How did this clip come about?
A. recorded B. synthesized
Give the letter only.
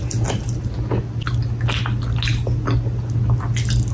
A